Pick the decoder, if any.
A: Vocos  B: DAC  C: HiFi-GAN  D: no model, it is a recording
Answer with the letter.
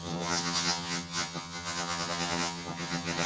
C